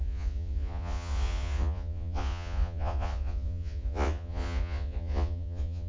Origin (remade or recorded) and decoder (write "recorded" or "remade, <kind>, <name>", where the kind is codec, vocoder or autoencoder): remade, vocoder, Vocos